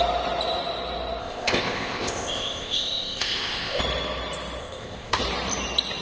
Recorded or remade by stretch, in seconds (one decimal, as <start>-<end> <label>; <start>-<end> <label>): 0.0-1.2 recorded; 1.2-3.8 remade; 3.8-4.6 recorded; 4.6-5.2 remade; 5.2-6.0 recorded